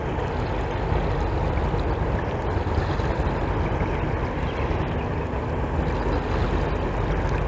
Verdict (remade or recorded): recorded